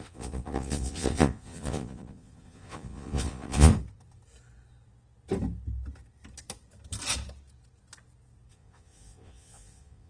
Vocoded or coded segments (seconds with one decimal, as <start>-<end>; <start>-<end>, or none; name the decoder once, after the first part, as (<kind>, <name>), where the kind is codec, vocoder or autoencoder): 0.0-3.7 (vocoder, Vocos); 8.5-10.1